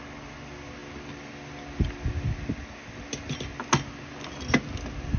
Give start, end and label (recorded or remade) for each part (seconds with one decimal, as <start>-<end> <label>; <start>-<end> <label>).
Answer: 0.0-5.2 recorded